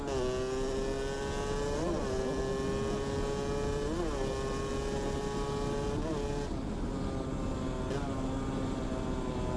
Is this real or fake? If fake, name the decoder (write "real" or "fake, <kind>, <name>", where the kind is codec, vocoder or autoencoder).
real